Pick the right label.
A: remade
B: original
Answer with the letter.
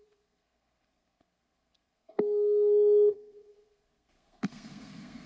A